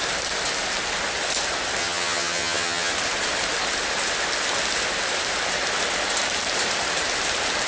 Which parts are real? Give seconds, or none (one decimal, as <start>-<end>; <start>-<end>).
0.0-1.8; 2.9-7.7